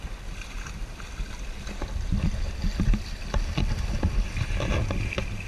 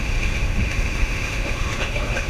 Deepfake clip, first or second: second